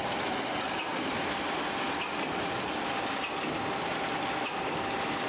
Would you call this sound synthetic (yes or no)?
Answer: no